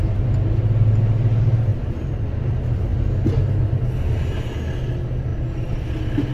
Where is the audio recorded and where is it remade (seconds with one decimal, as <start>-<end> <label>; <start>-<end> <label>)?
0.0-6.3 recorded